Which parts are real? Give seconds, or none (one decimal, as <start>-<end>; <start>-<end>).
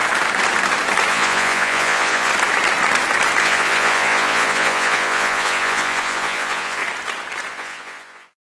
0.0-1.1; 2.3-3.4; 6.8-7.5